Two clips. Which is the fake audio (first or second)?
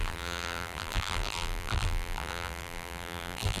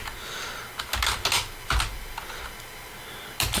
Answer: first